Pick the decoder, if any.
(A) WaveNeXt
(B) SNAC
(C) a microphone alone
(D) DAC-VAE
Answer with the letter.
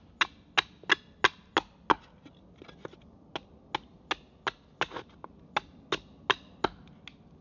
C